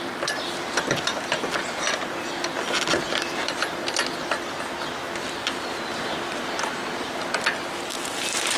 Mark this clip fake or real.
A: real